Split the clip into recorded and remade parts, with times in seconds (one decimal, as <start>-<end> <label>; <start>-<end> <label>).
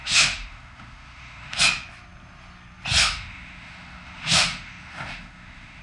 0.0-1.6 remade; 1.6-3.0 recorded; 3.0-5.8 remade